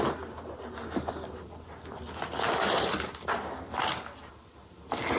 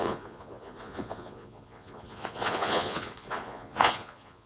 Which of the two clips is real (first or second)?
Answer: first